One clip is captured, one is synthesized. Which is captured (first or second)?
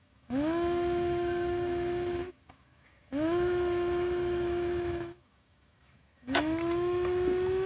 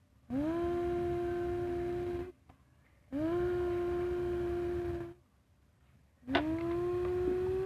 second